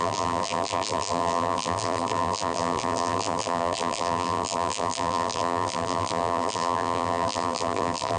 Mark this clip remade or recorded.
remade